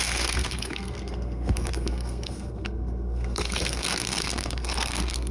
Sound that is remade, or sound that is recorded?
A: remade